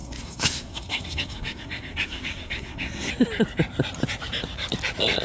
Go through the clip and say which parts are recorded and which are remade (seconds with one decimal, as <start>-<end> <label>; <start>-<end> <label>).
0.0-3.1 remade; 3.1-5.2 recorded